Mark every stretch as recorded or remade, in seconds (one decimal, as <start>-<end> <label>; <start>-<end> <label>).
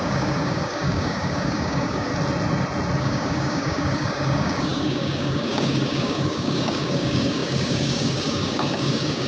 0.0-2.1 remade; 2.1-3.0 recorded; 3.0-9.3 remade